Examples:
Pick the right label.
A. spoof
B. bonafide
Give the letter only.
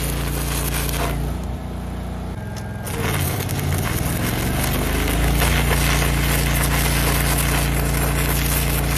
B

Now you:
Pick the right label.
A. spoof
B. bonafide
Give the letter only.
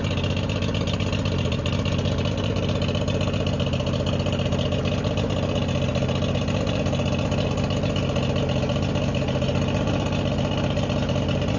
B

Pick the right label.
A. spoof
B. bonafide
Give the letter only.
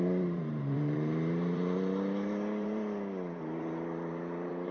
A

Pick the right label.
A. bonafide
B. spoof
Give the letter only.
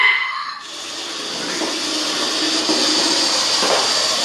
A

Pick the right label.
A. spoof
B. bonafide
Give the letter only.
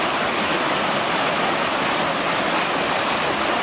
B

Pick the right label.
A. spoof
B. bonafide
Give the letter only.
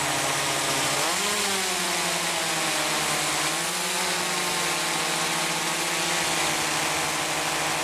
B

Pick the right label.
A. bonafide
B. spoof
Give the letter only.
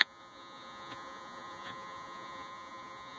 B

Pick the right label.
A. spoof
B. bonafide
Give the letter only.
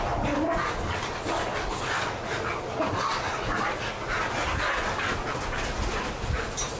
B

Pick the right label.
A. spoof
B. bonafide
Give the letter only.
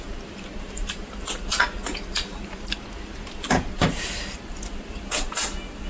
A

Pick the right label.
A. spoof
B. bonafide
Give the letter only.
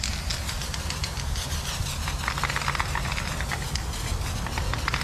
B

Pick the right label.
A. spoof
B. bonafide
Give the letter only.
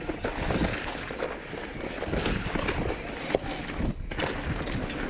B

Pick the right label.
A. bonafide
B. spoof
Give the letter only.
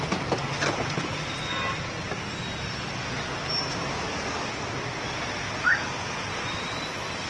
A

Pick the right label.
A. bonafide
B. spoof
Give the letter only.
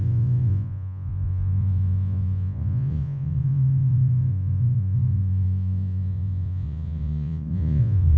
B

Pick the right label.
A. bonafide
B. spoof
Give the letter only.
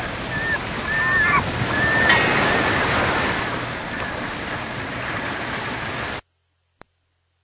A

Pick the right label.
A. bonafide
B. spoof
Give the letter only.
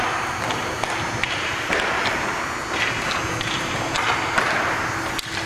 A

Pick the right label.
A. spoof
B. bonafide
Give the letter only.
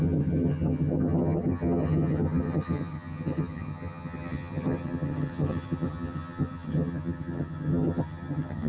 A